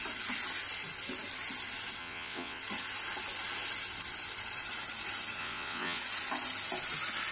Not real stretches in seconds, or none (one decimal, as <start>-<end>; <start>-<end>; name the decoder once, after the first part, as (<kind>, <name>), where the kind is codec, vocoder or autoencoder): 2.0-2.6 (vocoder, WaveNeXt); 5.4-6.0